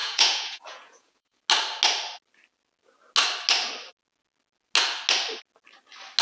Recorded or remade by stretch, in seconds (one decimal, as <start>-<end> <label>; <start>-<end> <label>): 0.0-1.4 remade; 1.4-6.2 recorded